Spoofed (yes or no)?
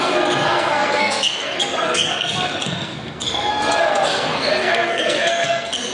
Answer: yes